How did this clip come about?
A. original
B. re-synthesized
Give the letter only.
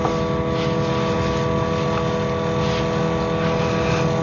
A